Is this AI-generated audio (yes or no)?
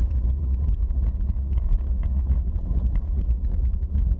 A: yes